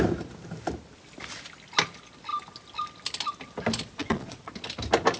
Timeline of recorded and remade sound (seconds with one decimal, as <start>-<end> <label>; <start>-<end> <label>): 0.0-4.0 recorded; 4.0-4.5 remade; 4.5-5.2 recorded